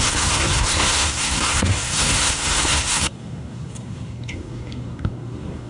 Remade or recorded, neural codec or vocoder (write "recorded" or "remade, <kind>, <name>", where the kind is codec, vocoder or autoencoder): remade, codec, SNAC